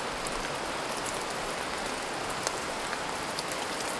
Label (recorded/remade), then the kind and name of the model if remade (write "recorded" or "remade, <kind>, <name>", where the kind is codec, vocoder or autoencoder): recorded